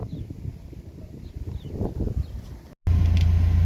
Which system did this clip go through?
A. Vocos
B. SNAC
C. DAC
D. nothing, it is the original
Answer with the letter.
D